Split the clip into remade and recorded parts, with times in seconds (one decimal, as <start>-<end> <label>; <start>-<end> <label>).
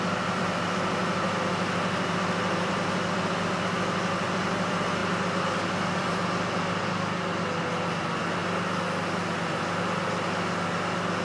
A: 0.0-11.2 recorded